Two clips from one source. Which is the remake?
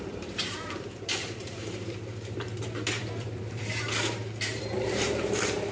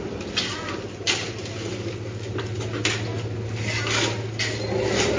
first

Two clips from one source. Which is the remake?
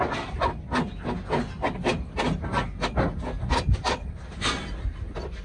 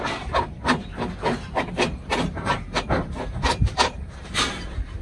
second